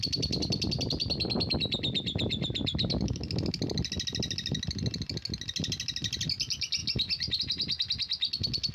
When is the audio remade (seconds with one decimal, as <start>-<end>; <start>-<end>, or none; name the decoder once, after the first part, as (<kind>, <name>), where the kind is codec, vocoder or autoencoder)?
none